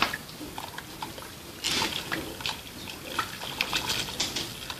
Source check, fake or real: real